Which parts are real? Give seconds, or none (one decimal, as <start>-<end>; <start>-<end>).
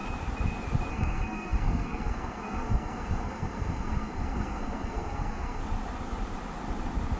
0.0-0.9; 5.6-7.2